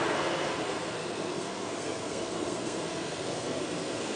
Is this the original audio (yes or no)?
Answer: no